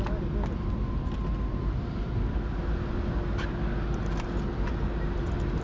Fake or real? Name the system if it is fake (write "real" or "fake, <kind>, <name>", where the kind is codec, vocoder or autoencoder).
real